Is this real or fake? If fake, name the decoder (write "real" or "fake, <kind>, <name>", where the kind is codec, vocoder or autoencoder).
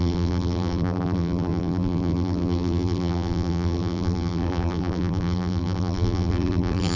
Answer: fake, vocoder, BigVGAN v2